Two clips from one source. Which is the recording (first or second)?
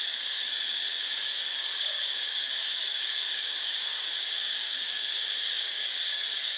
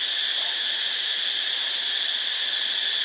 second